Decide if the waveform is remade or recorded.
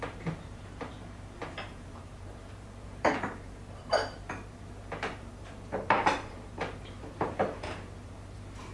remade